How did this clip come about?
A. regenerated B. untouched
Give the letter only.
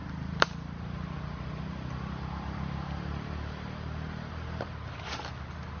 B